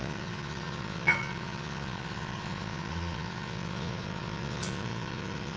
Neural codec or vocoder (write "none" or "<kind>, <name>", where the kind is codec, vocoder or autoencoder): vocoder, Vocos